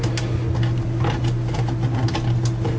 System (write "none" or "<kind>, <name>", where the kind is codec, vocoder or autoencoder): none